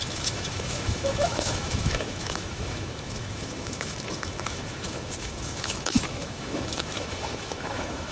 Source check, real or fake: fake